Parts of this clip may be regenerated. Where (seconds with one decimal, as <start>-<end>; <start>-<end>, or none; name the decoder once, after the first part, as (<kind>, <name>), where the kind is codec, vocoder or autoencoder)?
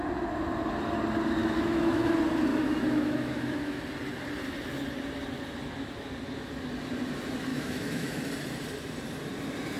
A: 1.4-2.1 (autoencoder, DAC-VAE); 2.5-3.8; 7.5-8.2